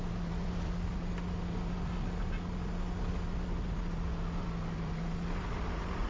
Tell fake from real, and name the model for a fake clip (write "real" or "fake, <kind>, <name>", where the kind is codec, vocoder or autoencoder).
real